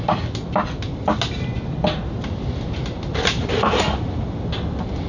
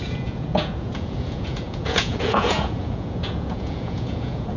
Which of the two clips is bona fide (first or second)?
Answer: first